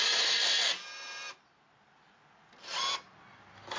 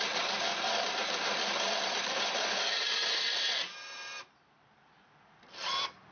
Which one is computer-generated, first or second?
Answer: second